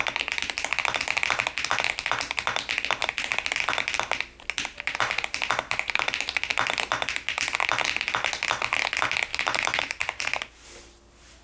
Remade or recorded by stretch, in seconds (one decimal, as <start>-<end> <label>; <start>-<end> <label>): 0.0-9.3 recorded; 9.3-10.5 remade; 10.5-11.4 recorded